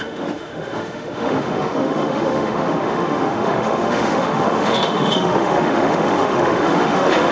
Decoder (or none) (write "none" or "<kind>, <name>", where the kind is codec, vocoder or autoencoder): autoencoder, DAC-VAE